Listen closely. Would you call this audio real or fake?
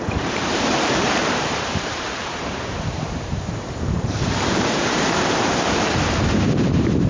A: fake